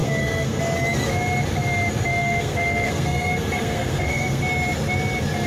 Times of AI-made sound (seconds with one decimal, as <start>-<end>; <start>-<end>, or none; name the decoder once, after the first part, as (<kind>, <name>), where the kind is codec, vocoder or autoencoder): 0.0-0.6 (codec, SNAC); 2.1-4.4